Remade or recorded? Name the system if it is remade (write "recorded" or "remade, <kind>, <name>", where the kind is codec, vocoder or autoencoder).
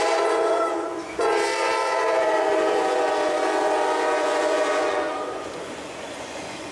remade, vocoder, Vocos